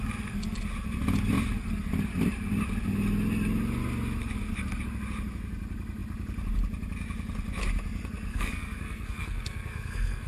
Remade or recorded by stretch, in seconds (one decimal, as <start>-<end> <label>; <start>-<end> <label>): 0.0-8.3 recorded; 8.3-10.3 remade